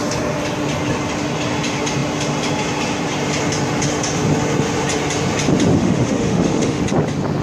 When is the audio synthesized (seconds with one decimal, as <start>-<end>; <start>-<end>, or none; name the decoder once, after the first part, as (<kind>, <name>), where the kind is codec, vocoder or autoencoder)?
5.8-6.8 (autoencoder, DAC-VAE)